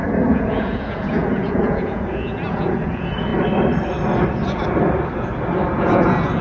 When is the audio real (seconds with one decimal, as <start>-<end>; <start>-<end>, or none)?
3.3-5.8